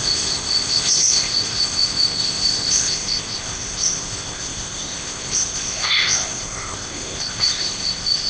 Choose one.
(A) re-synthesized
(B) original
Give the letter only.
A